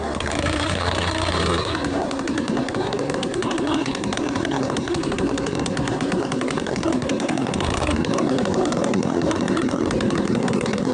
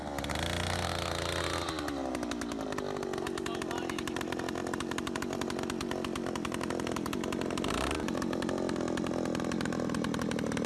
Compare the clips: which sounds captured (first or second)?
second